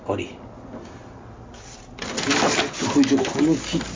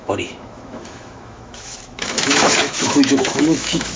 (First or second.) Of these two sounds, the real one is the first